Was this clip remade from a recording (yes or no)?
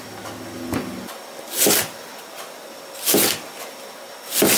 no